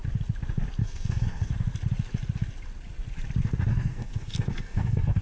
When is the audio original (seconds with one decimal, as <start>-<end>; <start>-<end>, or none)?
0.0-0.8; 1.5-3.7